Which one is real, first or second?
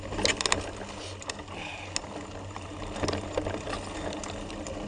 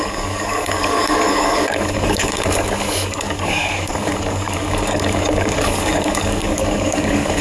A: first